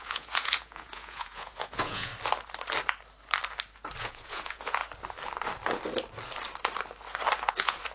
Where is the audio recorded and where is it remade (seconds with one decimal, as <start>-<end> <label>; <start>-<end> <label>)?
0.0-2.1 remade; 2.1-4.0 recorded; 4.0-4.8 remade; 4.8-7.5 recorded; 7.5-7.9 remade